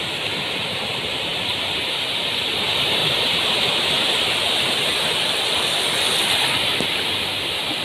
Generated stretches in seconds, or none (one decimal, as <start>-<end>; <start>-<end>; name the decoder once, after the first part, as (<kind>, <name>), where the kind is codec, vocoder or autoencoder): 0.0-4.9 (vocoder, BigVGAN v2)